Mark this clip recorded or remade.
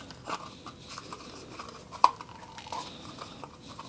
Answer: recorded